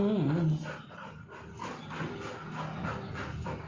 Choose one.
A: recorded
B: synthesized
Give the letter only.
A